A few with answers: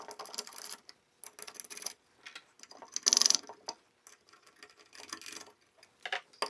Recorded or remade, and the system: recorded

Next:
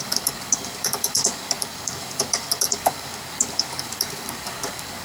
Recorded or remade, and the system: remade, codec, DAC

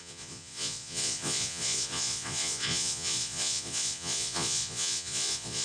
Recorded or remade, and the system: remade, vocoder, Vocos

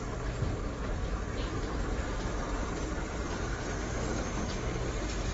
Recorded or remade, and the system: recorded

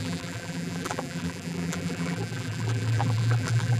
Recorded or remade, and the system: remade, vocoder, BigVGAN v2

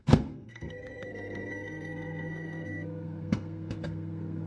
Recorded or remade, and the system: remade, codec, SNAC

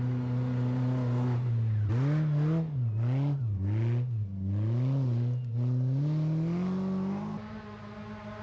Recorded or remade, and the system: recorded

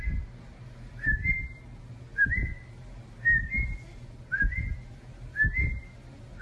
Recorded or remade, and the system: recorded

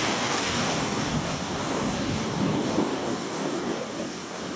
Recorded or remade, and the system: remade, codec, DAC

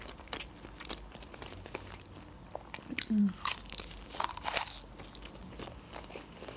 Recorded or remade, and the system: remade, vocoder, BigVGAN v2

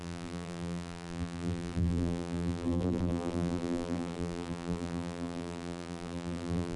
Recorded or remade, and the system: remade, vocoder, BigVGAN v2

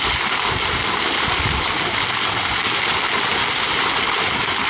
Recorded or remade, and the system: recorded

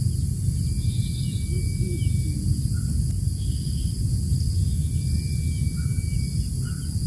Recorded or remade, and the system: recorded